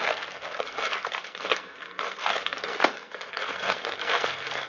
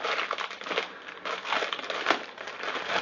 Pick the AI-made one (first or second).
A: first